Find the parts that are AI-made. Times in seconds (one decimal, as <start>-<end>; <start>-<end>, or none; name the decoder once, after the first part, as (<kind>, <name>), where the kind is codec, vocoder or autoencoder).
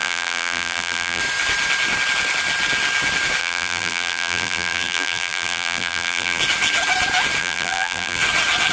0.0-1.2 (vocoder, BigVGAN v2); 3.4-6.4; 7.4-8.2